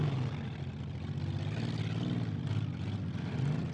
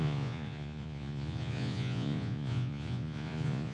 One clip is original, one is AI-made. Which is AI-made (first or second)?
second